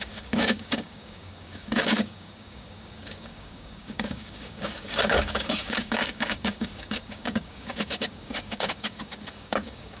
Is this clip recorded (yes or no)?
no